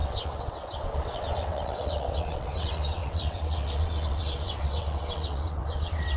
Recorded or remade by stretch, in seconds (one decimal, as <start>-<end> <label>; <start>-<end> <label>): 0.0-6.2 remade